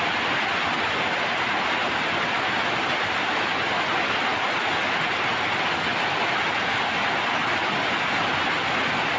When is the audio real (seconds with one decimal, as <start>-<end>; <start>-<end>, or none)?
0.0-9.2